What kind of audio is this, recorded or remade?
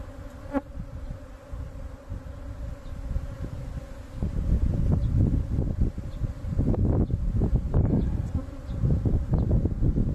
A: recorded